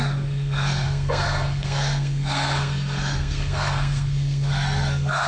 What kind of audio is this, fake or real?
fake